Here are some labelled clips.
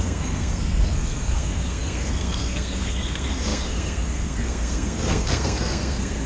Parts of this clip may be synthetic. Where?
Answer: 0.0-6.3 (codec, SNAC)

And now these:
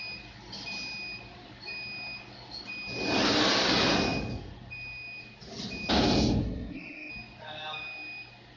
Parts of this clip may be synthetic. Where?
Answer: 6.4-7.1 (codec, SNAC)

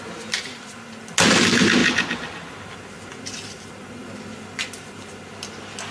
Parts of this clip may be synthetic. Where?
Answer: none

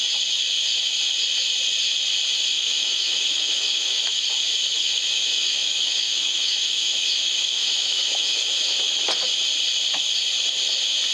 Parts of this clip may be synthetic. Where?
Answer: 2.5-4.2 (autoencoder, DAC-VAE); 4.7-8.7

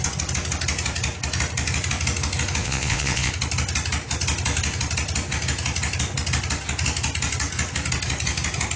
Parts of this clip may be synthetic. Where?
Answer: 2.6-3.3 (vocoder, Vocos)

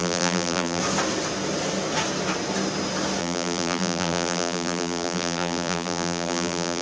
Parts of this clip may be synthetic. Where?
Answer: 0.0-0.8 (vocoder, BigVGAN v2); 3.2-6.8